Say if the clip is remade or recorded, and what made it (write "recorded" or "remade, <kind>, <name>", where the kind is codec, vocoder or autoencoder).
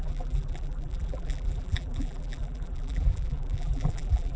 remade, vocoder, BigVGAN v2